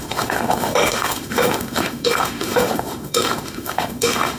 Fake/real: fake